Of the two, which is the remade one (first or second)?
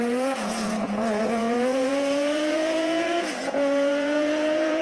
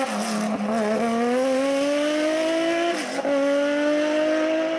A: first